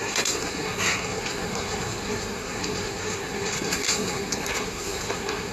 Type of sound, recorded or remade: remade